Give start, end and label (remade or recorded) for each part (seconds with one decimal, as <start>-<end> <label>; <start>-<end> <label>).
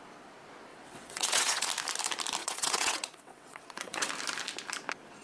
0.0-0.7 recorded; 0.7-1.7 remade; 1.7-2.4 recorded; 2.4-4.1 remade; 4.1-5.2 recorded